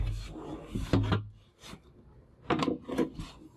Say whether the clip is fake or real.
real